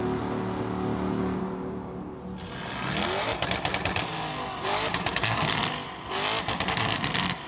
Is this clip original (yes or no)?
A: yes